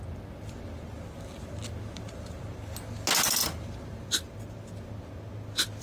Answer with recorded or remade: recorded